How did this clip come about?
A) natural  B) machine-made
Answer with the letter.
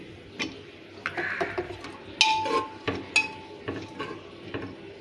A